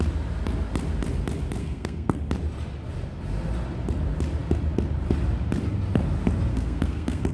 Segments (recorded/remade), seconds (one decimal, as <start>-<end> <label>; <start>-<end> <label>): 0.0-1.6 recorded; 1.6-2.2 remade; 2.2-6.5 recorded; 6.5-7.3 remade